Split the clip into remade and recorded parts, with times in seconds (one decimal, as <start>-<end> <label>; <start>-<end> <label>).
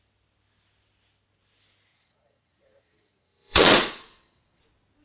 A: 0.0-1.9 recorded; 1.9-4.6 remade; 4.6-5.0 recorded